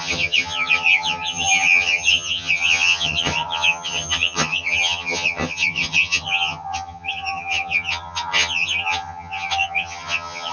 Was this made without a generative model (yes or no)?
no